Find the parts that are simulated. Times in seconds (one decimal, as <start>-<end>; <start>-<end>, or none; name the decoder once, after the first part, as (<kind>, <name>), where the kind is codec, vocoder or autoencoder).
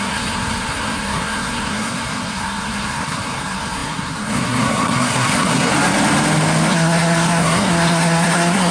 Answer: 0.0-5.7 (codec, SNAC); 6.7-8.7